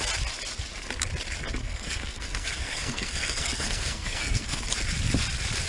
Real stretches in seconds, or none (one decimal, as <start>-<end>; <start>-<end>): 0.0-1.6; 4.6-5.7